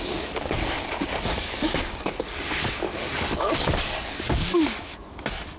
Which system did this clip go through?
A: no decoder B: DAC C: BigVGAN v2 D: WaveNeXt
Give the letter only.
B